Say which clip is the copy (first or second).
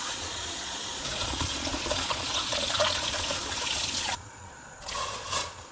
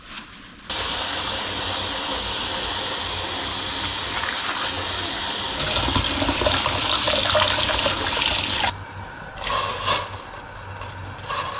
first